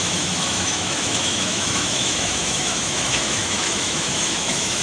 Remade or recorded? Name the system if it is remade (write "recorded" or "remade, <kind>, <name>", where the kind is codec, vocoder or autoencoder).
remade, autoencoder, DAC-VAE